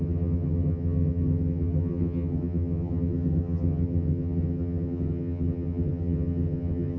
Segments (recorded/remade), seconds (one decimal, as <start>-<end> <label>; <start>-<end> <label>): 0.0-7.0 remade